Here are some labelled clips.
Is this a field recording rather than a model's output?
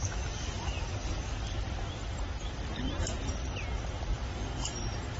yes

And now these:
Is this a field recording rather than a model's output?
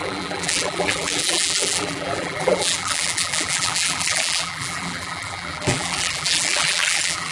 no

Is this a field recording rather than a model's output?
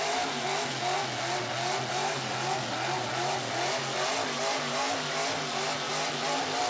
yes